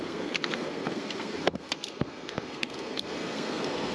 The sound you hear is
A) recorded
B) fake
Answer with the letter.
B